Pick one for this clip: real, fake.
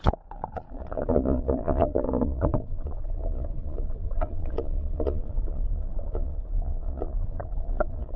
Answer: fake